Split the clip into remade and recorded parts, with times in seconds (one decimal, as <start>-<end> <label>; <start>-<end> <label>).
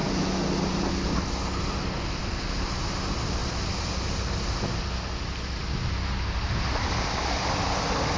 0.0-8.2 recorded